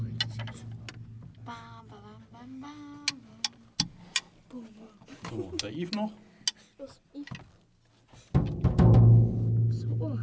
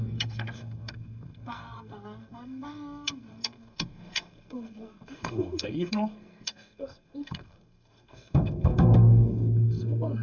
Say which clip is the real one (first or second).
first